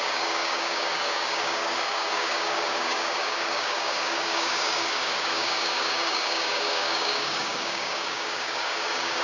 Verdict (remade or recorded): remade